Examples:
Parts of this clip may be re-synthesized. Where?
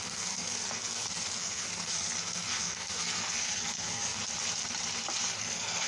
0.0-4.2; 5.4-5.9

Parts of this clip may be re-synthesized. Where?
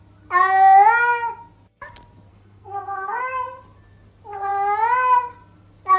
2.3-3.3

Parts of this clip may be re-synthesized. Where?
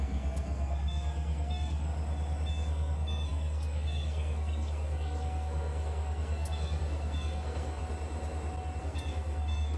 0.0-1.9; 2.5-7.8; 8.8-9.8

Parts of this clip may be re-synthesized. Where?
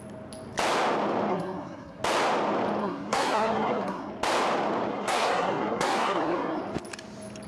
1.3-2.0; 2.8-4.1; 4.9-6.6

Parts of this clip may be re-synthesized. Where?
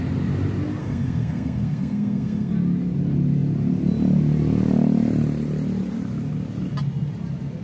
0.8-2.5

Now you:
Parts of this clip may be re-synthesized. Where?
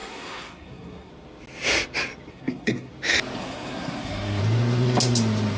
0.0-1.1; 2.3-2.9; 3.4-4.4